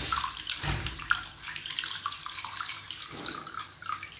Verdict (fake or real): fake